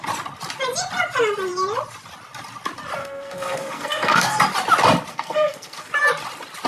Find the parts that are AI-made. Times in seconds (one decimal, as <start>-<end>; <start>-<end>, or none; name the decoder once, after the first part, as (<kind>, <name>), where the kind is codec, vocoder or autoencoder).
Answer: 3.0-4.4 (codec, SNAC); 5.1-5.9